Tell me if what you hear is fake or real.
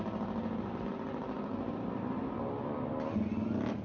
real